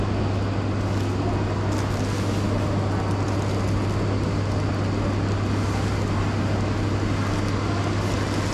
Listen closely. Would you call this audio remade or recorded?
recorded